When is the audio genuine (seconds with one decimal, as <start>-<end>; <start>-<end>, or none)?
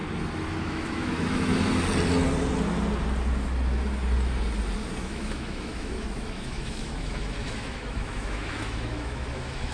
0.0-0.6; 1.5-5.0